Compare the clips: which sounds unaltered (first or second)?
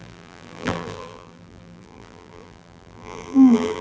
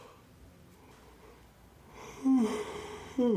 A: second